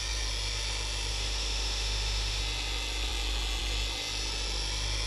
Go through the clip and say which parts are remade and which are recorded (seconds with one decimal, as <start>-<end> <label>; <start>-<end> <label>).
0.0-1.1 recorded; 1.1-2.4 remade; 2.4-5.1 recorded